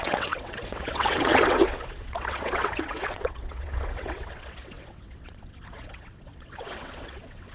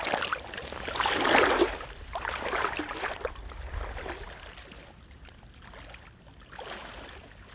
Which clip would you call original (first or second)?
second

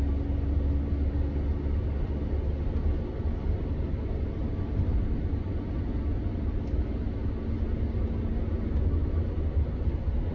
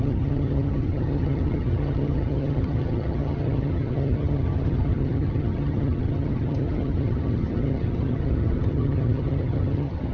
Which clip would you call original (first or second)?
first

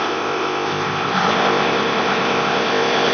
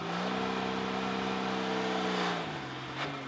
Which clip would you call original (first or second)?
second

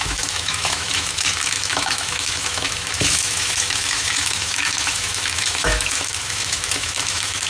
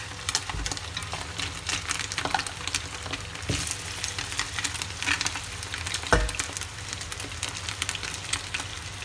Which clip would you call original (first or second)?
second